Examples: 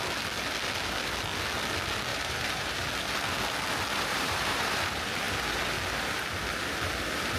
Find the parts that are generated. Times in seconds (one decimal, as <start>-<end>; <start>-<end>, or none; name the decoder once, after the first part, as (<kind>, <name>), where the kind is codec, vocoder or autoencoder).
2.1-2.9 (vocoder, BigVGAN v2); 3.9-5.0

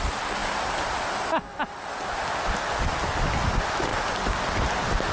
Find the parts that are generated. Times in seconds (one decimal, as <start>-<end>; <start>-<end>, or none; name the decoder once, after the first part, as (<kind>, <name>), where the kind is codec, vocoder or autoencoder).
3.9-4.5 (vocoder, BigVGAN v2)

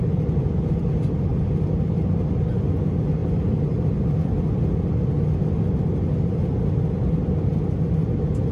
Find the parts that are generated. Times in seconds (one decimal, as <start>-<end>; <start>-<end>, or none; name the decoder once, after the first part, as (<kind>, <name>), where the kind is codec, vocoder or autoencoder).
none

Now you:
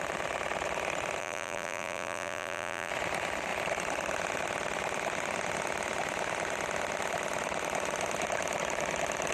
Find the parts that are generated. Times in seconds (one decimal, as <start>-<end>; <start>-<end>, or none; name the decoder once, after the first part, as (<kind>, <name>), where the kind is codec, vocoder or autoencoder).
1.2-2.9 (vocoder, BigVGAN v2)